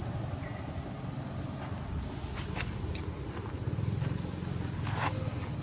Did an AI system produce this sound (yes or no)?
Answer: no